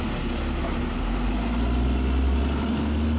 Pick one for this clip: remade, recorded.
recorded